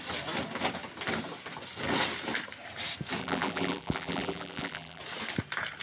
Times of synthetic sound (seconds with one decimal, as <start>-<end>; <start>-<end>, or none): 3.2-5.0

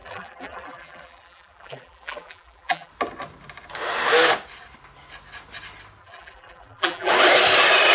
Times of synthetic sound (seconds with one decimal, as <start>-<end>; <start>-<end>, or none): 0.0-2.9; 6.0-7.1

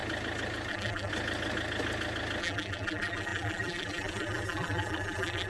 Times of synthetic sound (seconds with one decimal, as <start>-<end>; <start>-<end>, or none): 0.7-1.1; 2.4-5.5

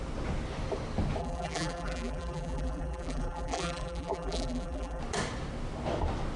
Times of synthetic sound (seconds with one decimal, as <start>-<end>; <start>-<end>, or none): 1.2-5.0

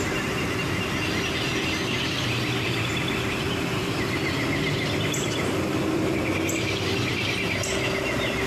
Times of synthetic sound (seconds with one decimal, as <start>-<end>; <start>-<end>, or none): 2.0-6.3